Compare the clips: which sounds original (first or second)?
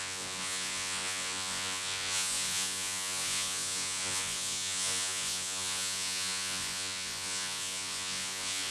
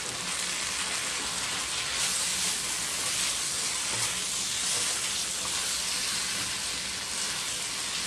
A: second